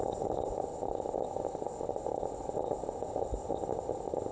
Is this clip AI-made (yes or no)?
no